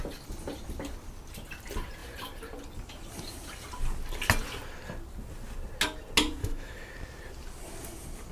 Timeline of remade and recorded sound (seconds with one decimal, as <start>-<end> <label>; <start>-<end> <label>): 0.0-6.4 recorded; 6.4-6.9 remade; 6.9-8.3 recorded